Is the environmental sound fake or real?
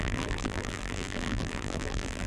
fake